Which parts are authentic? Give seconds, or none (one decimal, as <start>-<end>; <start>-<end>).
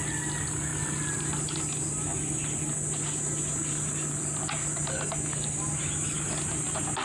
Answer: 0.0-7.0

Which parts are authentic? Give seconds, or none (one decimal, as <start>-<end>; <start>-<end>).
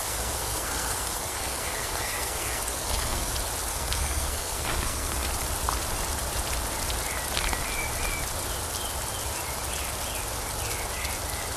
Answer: 3.3-3.7; 5.3-11.6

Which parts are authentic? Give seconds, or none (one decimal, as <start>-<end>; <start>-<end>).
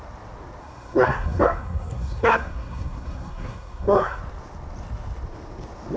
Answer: 0.0-0.6; 4.2-6.0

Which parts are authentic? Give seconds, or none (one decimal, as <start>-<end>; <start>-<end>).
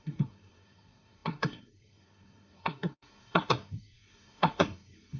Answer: none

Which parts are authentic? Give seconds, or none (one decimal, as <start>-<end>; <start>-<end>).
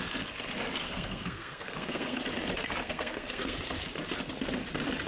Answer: 0.0-0.8; 2.2-2.8; 3.6-5.1